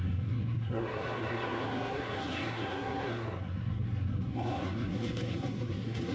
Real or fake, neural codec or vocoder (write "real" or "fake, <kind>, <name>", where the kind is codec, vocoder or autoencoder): fake, codec, SNAC